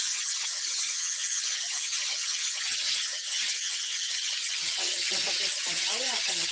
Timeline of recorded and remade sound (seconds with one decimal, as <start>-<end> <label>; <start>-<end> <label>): 0.0-6.5 remade